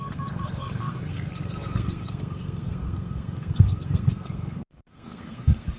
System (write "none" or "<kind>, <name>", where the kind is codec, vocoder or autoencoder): codec, SNAC